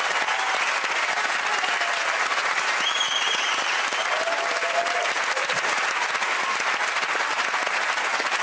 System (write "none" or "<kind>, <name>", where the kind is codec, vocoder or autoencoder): none